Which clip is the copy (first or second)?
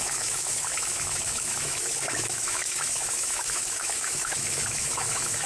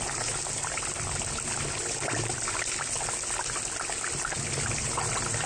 first